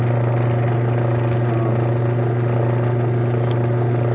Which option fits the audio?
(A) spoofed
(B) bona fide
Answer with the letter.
B